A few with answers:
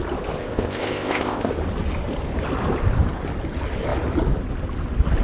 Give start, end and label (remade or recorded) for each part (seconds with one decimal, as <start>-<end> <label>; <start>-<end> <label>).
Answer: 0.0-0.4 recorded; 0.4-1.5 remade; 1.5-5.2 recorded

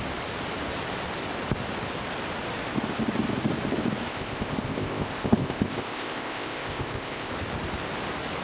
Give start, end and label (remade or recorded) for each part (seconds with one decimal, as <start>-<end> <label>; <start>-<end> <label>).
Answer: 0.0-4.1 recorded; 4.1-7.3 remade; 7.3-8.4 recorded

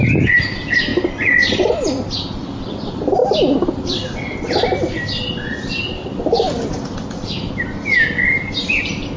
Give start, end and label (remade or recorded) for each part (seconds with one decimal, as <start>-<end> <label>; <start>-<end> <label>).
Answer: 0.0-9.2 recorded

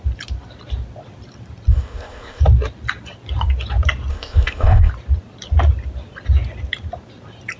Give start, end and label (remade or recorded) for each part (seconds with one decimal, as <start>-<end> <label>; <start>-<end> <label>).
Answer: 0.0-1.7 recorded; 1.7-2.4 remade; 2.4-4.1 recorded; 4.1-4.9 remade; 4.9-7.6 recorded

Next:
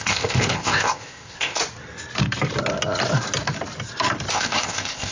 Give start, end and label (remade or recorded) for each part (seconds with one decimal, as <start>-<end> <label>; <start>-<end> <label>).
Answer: 0.0-1.6 remade; 1.6-4.3 recorded; 4.3-5.1 remade

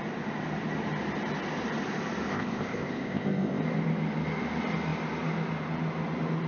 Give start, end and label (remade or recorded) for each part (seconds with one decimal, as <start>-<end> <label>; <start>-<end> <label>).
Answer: 0.0-2.3 recorded; 2.3-3.6 remade; 3.6-6.5 recorded

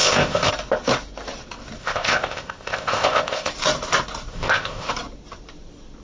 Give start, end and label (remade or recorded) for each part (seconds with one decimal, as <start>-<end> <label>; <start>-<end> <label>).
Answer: 0.0-0.5 remade; 0.5-1.8 recorded; 1.8-3.5 remade; 3.5-4.3 recorded; 4.3-4.9 remade; 4.9-6.0 recorded

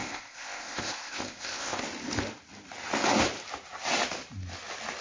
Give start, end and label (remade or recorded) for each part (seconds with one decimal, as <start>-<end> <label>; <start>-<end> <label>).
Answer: 0.0-1.8 remade; 1.8-5.0 recorded